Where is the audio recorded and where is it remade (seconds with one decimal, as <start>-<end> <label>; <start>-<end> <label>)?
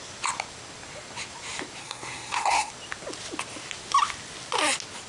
0.0-1.8 recorded; 1.8-2.7 remade; 2.7-5.1 recorded